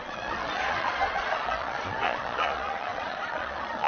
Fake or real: fake